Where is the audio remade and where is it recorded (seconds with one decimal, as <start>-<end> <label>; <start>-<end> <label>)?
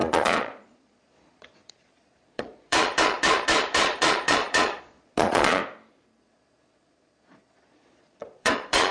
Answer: 0.0-5.6 remade; 5.6-6.2 recorded; 6.2-8.9 remade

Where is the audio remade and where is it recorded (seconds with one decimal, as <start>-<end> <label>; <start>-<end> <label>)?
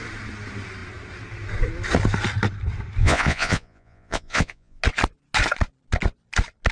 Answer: 0.0-3.0 recorded; 3.0-4.8 remade; 4.8-6.7 recorded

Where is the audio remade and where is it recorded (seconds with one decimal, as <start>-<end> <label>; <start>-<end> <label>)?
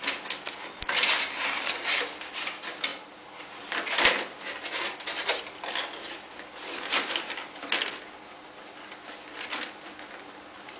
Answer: 0.0-10.8 recorded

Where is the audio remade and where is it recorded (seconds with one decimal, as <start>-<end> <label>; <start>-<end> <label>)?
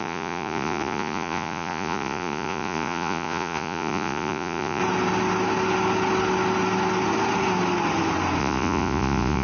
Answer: 0.0-4.8 remade; 4.8-8.4 recorded; 8.4-9.4 remade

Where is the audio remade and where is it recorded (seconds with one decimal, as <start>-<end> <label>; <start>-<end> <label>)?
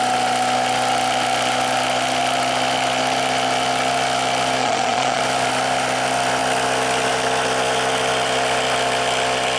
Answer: 0.0-4.6 recorded; 4.6-5.2 remade; 5.2-9.6 recorded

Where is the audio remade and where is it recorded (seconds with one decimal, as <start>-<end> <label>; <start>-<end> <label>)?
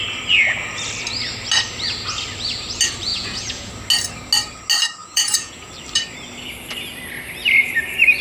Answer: 0.0-3.1 recorded; 3.1-3.7 remade; 3.7-5.0 recorded; 5.0-5.7 remade; 5.7-8.2 recorded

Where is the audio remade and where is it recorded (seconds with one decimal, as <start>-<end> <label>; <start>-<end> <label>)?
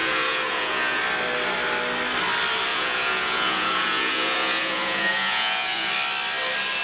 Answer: 0.0-1.0 remade; 1.0-2.7 recorded; 2.7-5.9 remade; 5.9-6.8 recorded